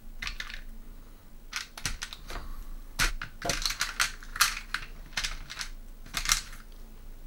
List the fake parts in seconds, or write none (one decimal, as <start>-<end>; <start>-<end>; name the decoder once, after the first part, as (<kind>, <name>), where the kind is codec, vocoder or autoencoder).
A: 2.5-3.1 (vocoder, BigVGAN v2)